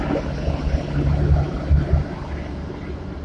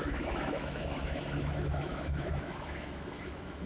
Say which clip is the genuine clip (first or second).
first